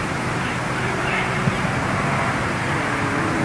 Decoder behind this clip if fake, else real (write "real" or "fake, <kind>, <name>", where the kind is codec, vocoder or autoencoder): fake, vocoder, BigVGAN v2